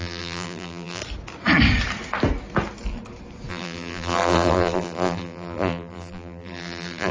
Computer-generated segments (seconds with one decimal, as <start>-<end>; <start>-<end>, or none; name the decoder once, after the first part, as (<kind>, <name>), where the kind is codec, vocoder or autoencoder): 0.0-1.0 (vocoder, BigVGAN v2); 3.5-7.1